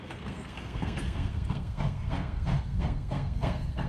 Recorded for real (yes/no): no